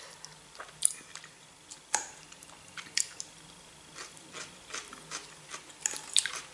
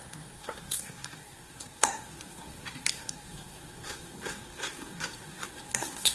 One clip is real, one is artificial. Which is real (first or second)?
first